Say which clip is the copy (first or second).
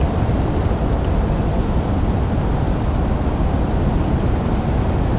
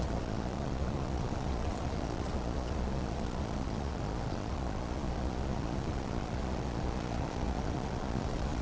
second